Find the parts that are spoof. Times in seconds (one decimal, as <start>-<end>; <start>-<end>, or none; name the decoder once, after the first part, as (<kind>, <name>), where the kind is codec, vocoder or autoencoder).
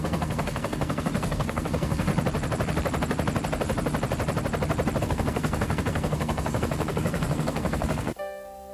0.0-2.1 (codec, SNAC); 5.0-8.7